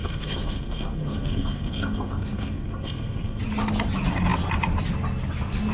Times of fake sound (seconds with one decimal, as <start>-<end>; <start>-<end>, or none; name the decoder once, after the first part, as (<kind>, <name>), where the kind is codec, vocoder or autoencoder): 0.0-3.4 (codec, SNAC)